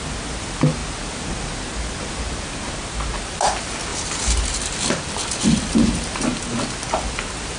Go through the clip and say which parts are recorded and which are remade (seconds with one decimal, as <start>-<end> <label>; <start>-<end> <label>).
0.0-7.6 recorded